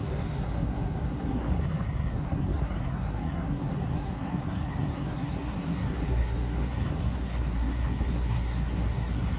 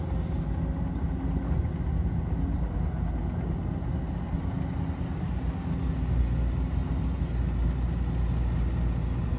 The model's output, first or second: first